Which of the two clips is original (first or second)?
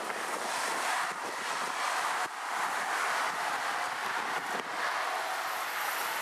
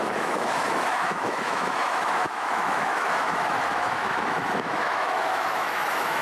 first